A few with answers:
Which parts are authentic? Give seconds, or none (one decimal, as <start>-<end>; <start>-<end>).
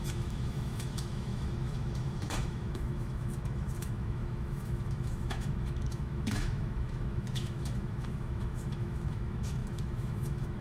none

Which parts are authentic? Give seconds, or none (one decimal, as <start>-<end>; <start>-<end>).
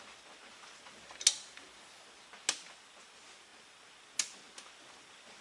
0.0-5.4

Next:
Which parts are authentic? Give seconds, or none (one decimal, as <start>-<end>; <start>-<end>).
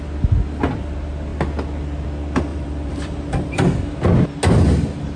0.0-2.5; 4.0-5.2